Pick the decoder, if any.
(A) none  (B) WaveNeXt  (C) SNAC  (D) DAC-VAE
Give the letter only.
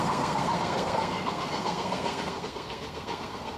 C